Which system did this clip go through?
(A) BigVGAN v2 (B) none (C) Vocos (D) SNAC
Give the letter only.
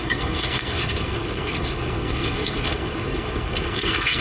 D